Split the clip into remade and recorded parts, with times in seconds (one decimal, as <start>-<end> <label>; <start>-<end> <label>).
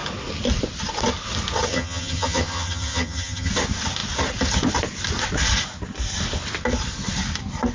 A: 0.0-1.7 recorded; 1.7-3.5 remade; 3.5-7.7 recorded